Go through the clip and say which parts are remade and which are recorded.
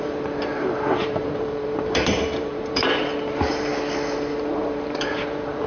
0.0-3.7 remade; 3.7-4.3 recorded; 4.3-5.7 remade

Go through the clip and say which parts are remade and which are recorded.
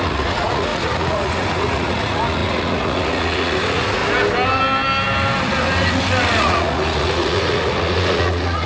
0.0-4.0 remade; 4.0-6.4 recorded; 6.4-8.7 remade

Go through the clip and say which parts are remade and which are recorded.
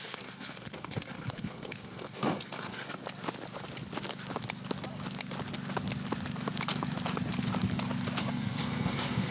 0.0-3.0 remade; 3.0-8.2 recorded; 8.2-9.3 remade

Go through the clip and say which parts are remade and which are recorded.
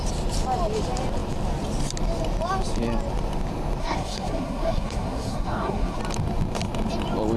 0.0-3.8 recorded; 3.8-6.0 remade; 6.0-7.4 recorded